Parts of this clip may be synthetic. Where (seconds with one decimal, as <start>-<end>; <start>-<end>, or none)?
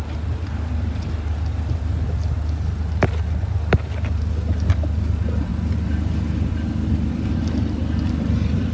none